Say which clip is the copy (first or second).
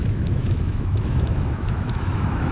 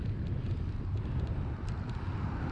first